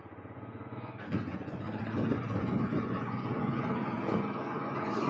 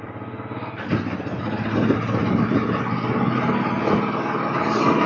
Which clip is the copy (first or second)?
first